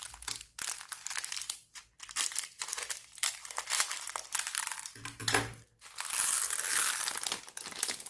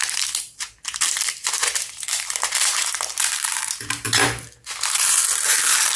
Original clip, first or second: first